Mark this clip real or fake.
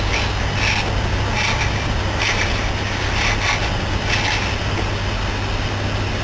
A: real